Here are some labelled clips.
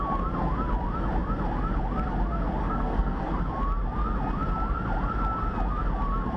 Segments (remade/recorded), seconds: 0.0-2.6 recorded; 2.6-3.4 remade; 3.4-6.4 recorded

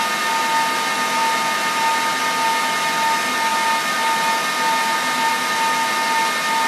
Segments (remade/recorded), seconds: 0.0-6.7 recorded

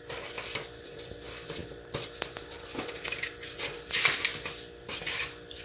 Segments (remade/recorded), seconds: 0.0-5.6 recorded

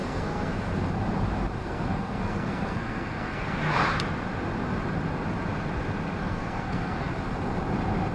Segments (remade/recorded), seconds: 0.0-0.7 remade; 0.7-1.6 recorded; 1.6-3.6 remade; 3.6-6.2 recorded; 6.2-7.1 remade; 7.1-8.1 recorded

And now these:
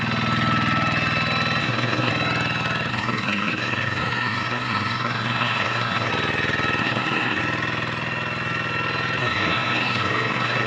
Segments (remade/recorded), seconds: 0.0-1.6 recorded; 1.6-2.1 remade; 2.1-2.9 recorded; 2.9-6.1 remade; 6.1-6.8 recorded; 6.8-7.4 remade; 7.4-9.2 recorded; 9.2-10.7 remade

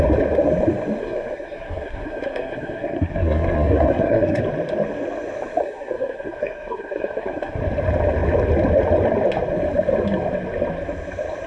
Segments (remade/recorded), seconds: 0.0-1.0 recorded; 1.0-4.4 remade; 4.4-5.6 recorded; 5.6-7.6 remade; 7.6-11.5 recorded